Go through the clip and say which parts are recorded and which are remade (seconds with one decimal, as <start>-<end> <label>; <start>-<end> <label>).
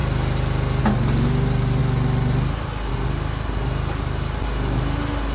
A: 0.0-5.3 recorded